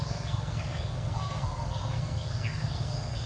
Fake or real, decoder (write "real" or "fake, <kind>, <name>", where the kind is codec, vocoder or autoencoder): fake, codec, SNAC